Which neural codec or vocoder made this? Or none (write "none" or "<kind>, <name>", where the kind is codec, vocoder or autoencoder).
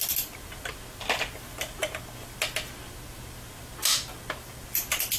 none